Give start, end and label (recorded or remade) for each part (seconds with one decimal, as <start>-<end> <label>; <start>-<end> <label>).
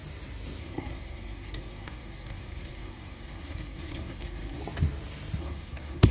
0.0-0.6 recorded; 0.6-4.6 remade; 4.6-5.4 recorded; 5.4-6.1 remade